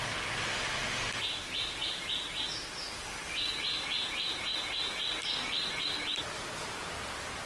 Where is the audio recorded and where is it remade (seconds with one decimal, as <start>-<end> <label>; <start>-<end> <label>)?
0.0-7.5 recorded

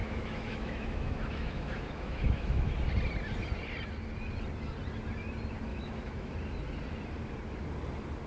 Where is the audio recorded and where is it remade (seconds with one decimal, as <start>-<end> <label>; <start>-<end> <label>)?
0.0-2.7 remade; 2.7-5.7 recorded; 5.7-6.3 remade; 6.3-8.3 recorded

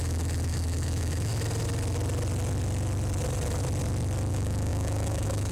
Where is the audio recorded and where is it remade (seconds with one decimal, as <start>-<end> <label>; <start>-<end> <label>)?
0.0-1.3 remade; 1.3-4.3 recorded; 4.3-5.5 remade

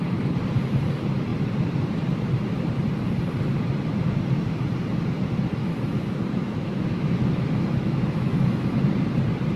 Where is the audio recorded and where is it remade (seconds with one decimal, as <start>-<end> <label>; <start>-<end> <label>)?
0.0-5.6 recorded; 5.6-8.8 remade; 8.8-9.6 recorded

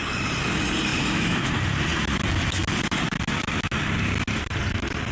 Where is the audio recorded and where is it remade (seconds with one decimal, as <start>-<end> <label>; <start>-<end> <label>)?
0.0-0.9 recorded; 0.9-1.5 remade; 1.5-5.1 recorded

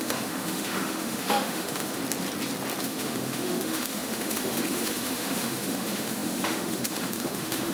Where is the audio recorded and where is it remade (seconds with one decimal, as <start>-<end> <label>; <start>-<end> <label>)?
0.0-2.0 remade; 2.0-2.8 recorded; 2.8-7.7 remade